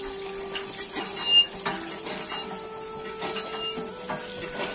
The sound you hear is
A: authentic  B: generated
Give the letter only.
A